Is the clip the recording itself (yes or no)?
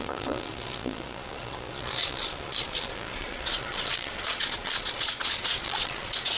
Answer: no